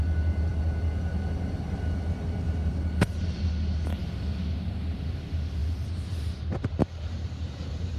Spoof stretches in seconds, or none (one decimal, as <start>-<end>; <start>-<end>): none